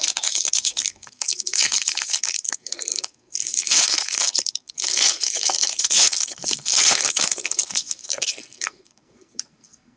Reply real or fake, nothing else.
fake